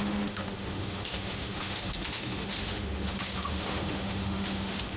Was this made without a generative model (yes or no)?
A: no